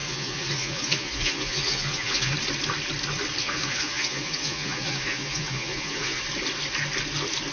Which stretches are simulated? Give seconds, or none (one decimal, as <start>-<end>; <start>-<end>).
0.0-2.3; 3.4-6.2